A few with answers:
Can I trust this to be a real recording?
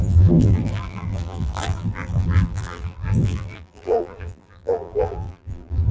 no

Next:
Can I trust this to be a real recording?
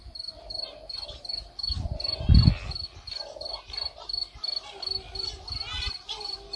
yes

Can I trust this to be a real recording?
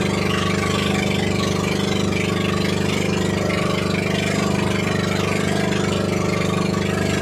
yes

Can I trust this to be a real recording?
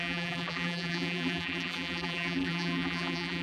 no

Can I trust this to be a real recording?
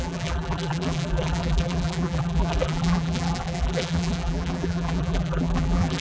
no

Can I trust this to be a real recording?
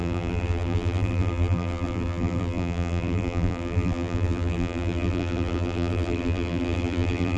no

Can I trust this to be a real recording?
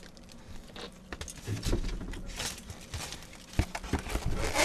yes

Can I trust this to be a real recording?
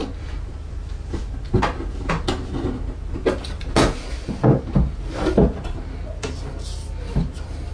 yes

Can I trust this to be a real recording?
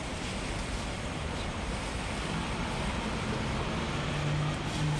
yes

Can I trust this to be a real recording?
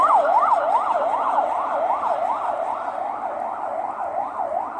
no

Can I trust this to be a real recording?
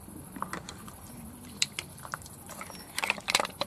no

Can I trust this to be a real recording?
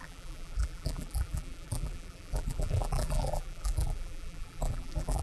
no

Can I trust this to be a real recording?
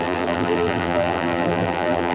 no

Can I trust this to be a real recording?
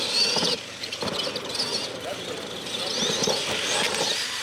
yes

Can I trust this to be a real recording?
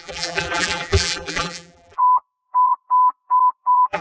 no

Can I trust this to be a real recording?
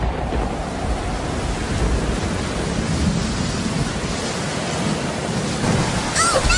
yes